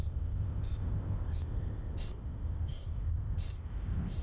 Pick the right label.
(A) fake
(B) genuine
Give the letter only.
A